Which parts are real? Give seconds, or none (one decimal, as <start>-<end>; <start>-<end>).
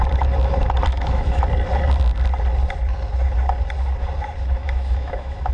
0.0-0.9; 1.4-4.6